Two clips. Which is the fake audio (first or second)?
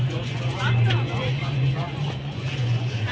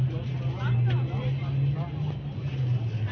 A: first